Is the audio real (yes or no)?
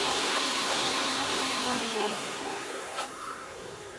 no